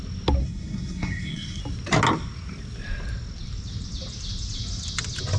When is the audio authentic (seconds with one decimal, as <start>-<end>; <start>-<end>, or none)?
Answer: 0.0-0.4; 1.6-5.4